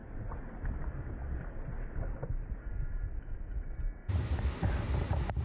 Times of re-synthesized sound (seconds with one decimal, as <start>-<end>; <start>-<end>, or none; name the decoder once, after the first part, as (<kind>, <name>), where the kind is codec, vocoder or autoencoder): none